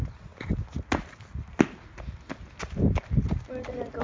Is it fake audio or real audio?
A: real